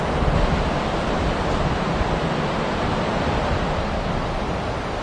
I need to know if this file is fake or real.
real